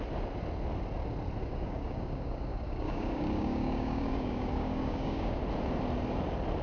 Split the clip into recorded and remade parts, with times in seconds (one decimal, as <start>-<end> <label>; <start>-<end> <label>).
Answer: 0.0-1.4 recorded; 1.4-5.4 remade; 5.4-6.6 recorded